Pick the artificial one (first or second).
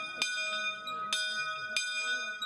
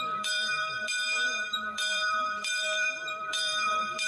second